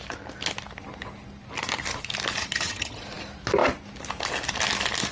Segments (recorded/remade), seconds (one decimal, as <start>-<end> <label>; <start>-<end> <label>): 0.0-2.4 recorded; 2.4-3.0 remade; 3.0-5.1 recorded

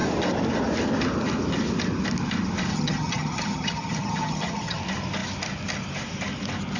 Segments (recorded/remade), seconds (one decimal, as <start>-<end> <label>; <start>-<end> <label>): 0.0-2.7 recorded; 2.7-4.8 remade; 4.8-6.8 recorded

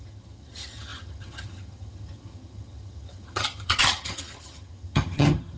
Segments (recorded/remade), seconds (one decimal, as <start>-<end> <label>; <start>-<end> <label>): 0.0-5.6 remade